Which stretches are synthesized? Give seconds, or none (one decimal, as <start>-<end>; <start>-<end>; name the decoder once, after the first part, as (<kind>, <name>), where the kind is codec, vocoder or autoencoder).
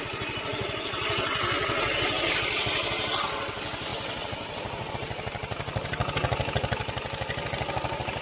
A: 3.9-4.9 (vocoder, BigVGAN v2)